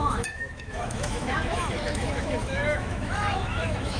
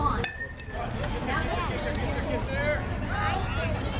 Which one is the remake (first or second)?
first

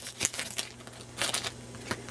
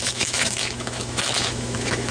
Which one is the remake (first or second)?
second